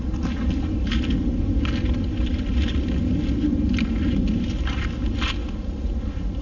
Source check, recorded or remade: recorded